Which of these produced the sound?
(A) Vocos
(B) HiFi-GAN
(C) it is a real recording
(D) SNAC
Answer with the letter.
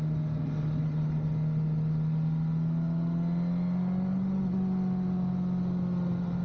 C